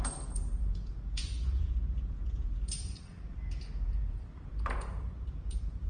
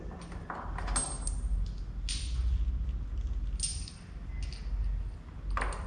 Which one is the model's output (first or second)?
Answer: first